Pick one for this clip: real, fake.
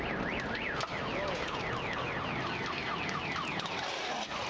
real